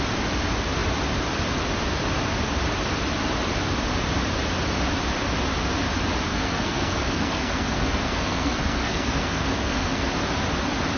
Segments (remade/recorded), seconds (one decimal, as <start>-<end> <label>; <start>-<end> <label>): 0.0-6.3 recorded; 6.3-10.1 remade; 10.1-11.0 recorded